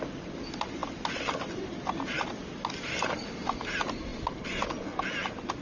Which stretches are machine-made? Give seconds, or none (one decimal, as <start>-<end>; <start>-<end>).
none